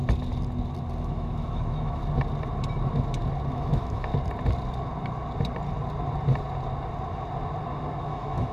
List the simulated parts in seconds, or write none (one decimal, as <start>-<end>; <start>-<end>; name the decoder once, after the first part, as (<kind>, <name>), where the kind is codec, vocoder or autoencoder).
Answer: 1.0-2.0 (autoencoder, DAC-VAE); 3.5-4.1; 8.0-8.5